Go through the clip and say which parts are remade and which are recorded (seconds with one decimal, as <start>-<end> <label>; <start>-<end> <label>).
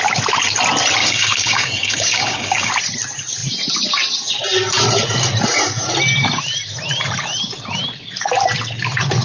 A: 0.0-1.0 recorded; 1.0-2.7 remade; 2.7-9.2 recorded